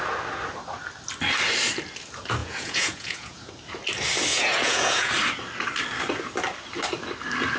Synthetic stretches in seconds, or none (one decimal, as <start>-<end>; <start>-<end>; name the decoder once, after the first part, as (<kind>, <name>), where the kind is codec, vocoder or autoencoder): 2.4-3.5 (vocoder, Vocos); 4.3-5.1